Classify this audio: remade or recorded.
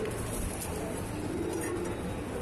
recorded